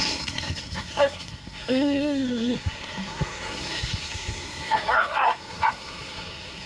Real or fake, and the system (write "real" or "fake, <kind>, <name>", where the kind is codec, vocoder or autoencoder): fake, codec, SNAC